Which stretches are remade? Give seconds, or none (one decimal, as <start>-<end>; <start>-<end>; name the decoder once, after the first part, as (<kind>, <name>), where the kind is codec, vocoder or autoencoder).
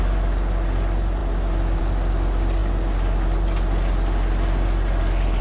none